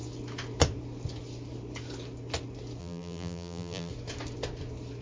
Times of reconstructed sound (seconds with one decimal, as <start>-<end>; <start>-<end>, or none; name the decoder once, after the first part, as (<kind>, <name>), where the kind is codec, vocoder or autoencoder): 2.8-3.9 (vocoder, BigVGAN v2)